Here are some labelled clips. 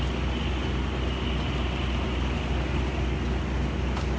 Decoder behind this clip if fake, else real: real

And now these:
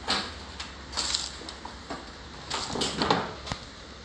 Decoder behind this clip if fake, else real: real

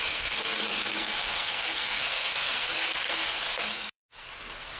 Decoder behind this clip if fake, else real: fake, codec, SNAC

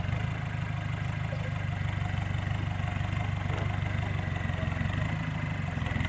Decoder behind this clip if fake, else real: real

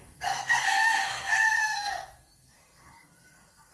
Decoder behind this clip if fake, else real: fake, codec, SNAC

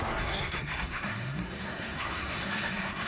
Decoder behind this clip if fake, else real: fake, codec, SNAC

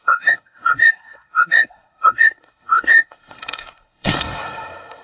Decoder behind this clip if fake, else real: fake, codec, SNAC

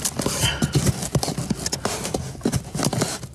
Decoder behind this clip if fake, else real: real